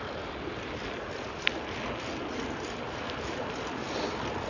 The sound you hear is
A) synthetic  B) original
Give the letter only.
B